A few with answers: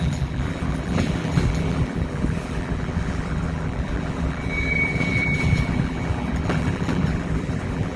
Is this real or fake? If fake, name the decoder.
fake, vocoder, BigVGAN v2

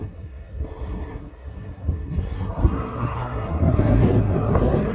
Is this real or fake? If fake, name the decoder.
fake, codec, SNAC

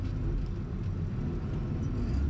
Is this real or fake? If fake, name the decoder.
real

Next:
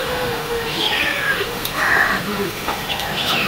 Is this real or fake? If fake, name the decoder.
fake, autoencoder, DAC-VAE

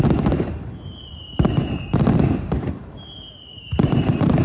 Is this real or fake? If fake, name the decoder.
fake, vocoder, BigVGAN v2